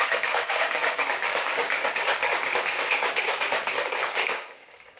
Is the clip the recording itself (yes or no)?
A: no